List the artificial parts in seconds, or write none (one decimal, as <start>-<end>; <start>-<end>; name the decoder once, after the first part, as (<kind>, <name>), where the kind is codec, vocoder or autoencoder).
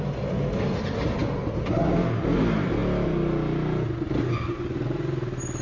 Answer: none